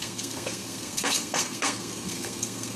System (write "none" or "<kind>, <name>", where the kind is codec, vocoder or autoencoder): codec, SNAC